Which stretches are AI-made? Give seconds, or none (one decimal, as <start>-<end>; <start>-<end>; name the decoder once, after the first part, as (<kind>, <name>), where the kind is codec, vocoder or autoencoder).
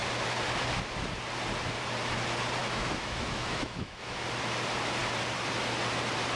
2.6-4.2 (autoencoder, DAC-VAE)